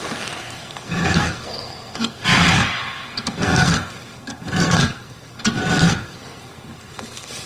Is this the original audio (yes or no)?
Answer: no